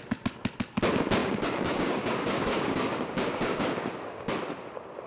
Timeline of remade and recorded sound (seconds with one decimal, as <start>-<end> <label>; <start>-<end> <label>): 0.0-1.2 recorded; 1.2-4.3 remade; 4.3-5.1 recorded